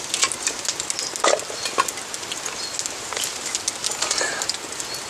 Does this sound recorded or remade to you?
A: recorded